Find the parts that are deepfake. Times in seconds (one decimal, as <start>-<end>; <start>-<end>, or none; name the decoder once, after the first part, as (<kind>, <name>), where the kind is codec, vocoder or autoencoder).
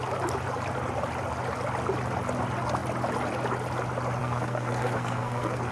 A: 4.2-5.7 (codec, SNAC)